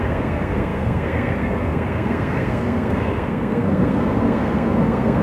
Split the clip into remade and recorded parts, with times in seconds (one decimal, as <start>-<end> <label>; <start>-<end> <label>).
0.0-5.2 remade